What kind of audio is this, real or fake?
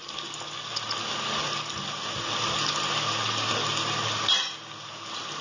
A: real